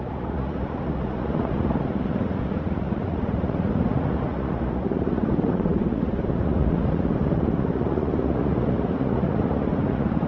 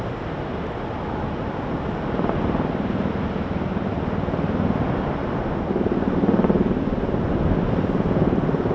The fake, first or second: first